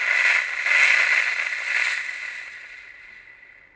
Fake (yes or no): no